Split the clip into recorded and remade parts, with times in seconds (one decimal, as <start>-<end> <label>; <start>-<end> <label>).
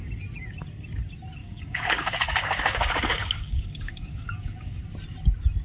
0.0-1.4 recorded; 1.4-4.8 remade; 4.8-5.6 recorded